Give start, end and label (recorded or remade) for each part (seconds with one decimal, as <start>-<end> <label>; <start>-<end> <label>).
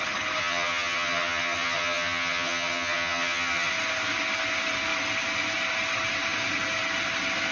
0.0-0.4 recorded; 0.4-3.7 remade; 3.7-7.5 recorded